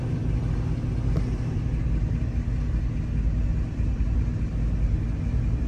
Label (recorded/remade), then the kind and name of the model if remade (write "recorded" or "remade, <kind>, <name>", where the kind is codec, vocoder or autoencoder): recorded